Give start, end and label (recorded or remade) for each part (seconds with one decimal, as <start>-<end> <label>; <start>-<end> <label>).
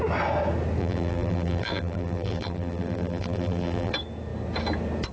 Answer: 0.0-0.8 recorded; 0.8-3.9 remade; 3.9-5.1 recorded